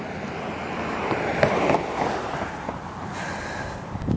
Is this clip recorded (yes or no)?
yes